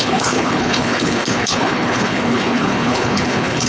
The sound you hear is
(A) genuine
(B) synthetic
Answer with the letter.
B